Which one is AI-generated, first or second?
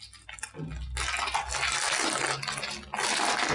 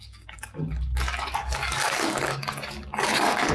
second